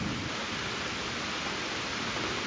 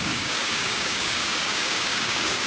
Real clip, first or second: first